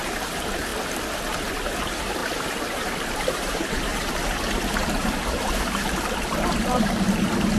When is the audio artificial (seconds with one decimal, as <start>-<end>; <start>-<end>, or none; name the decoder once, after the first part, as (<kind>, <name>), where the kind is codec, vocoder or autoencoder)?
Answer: 0.0-0.7 (vocoder, BigVGAN v2); 1.2-7.6